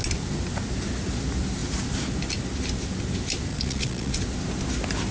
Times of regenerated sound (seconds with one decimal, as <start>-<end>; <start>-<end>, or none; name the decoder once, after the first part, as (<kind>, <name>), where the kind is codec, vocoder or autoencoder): 3.5-4.1 (vocoder, Vocos)